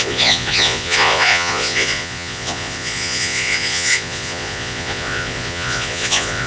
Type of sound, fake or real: fake